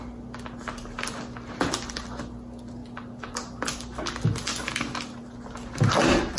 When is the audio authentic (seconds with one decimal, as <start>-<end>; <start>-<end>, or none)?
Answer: 0.0-6.4